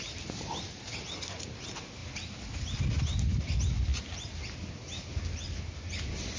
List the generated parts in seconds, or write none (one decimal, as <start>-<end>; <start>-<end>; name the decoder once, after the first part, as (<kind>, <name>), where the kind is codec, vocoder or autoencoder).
none